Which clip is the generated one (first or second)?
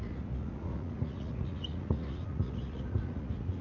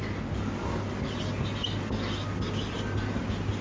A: first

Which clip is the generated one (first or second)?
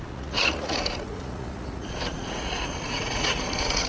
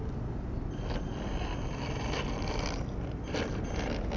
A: first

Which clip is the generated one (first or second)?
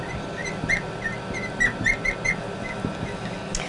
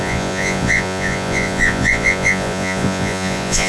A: second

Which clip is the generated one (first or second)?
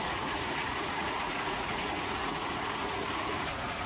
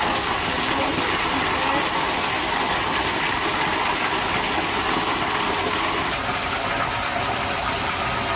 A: first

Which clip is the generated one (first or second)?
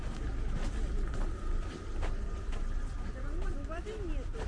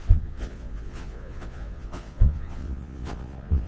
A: second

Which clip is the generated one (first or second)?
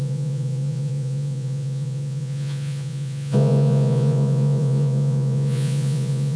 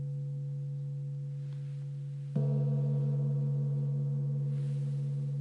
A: first